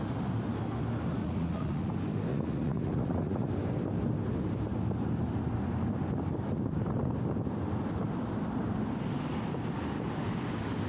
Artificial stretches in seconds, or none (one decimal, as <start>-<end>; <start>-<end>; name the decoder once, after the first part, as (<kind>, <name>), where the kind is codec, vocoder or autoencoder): 1.2-1.9 (vocoder, Vocos); 2.3-3.5